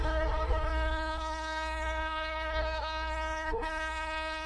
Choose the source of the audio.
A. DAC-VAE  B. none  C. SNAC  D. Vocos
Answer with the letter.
C